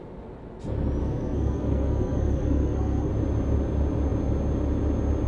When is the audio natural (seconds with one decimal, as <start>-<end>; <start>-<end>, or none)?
0.0-1.0; 3.1-5.3